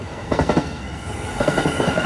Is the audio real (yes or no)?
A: no